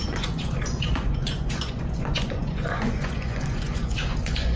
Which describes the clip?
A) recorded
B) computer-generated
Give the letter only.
B